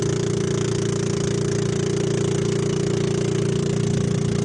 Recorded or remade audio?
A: recorded